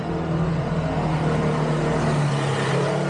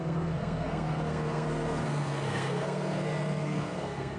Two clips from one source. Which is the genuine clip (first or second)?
first